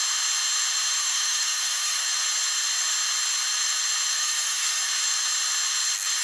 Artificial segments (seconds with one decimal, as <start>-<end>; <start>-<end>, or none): 1.0-2.0; 4.2-4.8